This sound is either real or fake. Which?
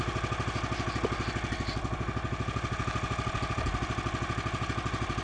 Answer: real